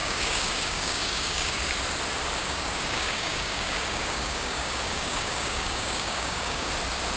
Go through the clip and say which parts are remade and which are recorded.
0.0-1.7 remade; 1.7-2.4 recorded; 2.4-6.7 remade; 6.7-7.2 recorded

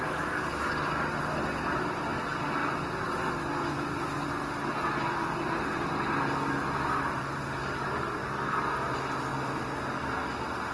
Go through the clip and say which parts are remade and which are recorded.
0.0-7.6 recorded; 7.6-8.6 remade; 8.6-10.7 recorded

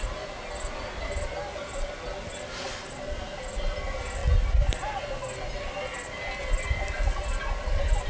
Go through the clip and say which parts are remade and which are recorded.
0.0-8.1 recorded

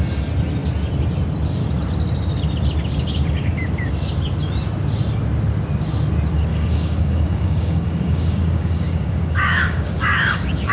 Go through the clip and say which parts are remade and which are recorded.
0.0-6.5 recorded; 6.5-10.7 remade

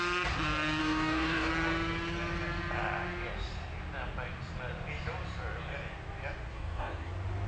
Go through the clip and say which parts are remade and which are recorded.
0.0-0.8 recorded; 0.8-1.5 remade; 1.5-6.5 recorded; 6.5-7.1 remade; 7.1-7.5 recorded